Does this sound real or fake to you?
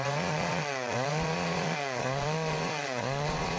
fake